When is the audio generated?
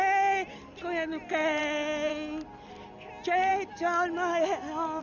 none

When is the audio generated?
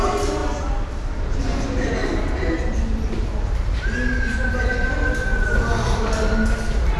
none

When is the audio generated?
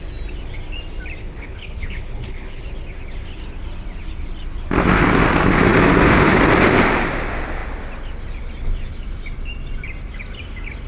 1.2-2.6 (codec, HILCodec)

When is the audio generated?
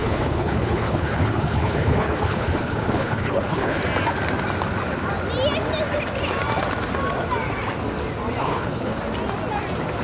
0.0-3.8 (codec, HILCodec); 8.4-9.0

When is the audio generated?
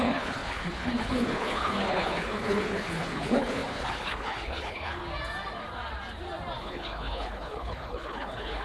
0.0-5.0 (codec, HILCodec); 6.6-8.6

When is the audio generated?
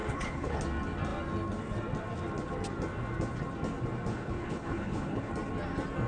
0.0-0.6 (codec, HILCodec); 4.1-5.3